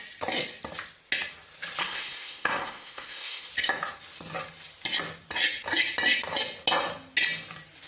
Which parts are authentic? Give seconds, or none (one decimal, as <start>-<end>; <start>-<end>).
0.0-1.8; 3.5-7.9